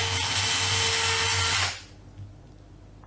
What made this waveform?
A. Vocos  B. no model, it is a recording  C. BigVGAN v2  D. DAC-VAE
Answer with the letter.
B